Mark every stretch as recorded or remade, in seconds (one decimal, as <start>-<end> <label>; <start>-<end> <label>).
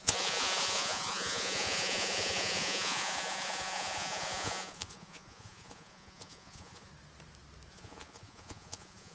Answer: 0.0-6.9 remade; 6.9-7.7 recorded; 7.7-9.1 remade